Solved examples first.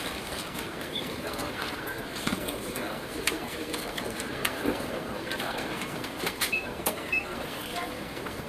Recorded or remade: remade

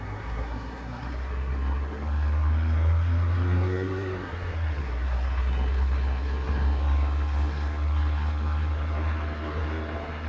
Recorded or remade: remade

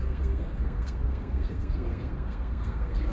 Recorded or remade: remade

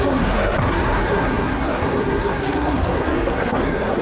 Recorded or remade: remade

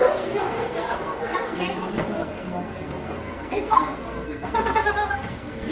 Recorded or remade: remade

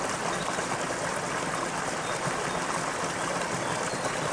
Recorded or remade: recorded